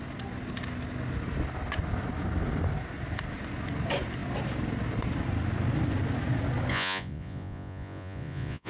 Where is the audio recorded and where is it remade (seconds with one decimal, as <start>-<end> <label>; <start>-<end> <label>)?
0.0-6.7 recorded; 6.7-8.7 remade